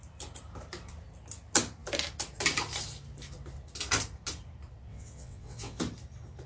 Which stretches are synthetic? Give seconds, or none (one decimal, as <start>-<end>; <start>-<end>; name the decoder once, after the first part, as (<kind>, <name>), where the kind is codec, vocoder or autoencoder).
4.9-5.8 (vocoder, WaveNeXt)